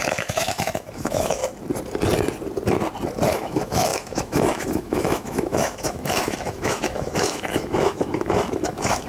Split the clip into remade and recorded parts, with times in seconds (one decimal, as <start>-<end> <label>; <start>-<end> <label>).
0.0-1.4 remade; 1.4-3.3 recorded; 3.3-9.1 remade